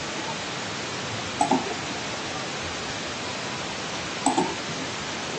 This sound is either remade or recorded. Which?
recorded